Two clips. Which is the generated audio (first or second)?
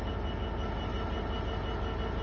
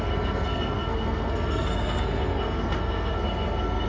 second